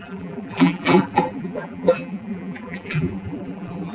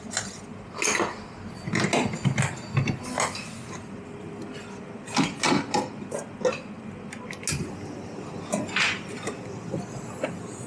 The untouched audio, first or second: second